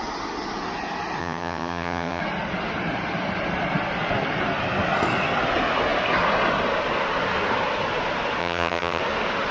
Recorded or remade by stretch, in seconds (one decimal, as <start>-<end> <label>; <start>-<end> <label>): 0.0-1.2 recorded; 1.2-2.2 remade; 2.2-8.4 recorded; 8.4-9.0 remade; 9.0-9.5 recorded